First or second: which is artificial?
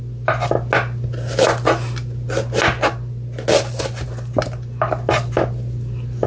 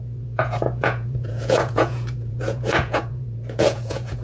second